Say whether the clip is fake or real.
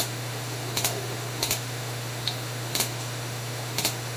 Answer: fake